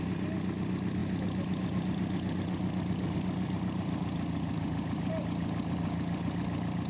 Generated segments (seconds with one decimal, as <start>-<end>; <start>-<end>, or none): none